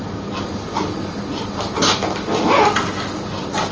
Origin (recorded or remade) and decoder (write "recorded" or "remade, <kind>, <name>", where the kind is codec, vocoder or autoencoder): recorded